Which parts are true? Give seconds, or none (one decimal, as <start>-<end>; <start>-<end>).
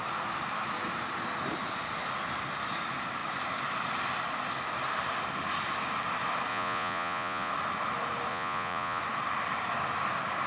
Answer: 0.0-6.5; 7.5-8.3; 9.0-10.5